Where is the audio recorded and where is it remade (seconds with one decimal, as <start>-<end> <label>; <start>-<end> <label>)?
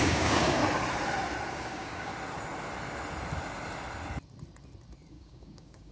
0.0-0.6 remade; 0.6-1.5 recorded; 1.5-2.1 remade; 2.1-5.1 recorded; 5.1-5.9 remade